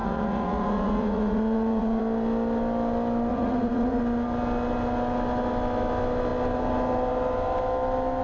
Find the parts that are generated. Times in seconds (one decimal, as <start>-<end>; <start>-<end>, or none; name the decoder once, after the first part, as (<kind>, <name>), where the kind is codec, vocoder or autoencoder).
0.0-2.0 (vocoder, Vocos); 3.3-4.0